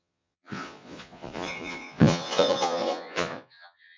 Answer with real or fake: fake